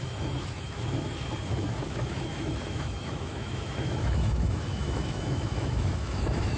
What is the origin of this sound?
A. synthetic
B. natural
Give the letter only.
A